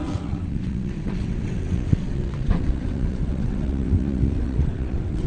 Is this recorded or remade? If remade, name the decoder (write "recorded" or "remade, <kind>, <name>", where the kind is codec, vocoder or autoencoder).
remade, vocoder, WaveNeXt